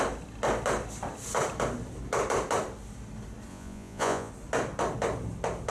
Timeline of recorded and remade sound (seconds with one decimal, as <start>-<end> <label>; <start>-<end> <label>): 0.0-3.5 recorded; 3.5-4.3 remade; 4.3-5.7 recorded